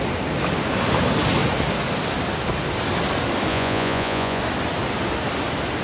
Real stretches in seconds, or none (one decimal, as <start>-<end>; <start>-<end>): 0.0-3.5; 4.4-5.8